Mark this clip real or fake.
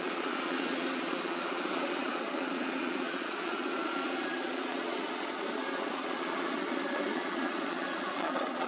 fake